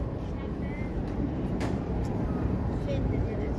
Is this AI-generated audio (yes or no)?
yes